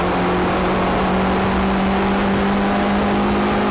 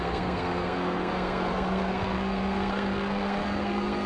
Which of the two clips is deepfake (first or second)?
second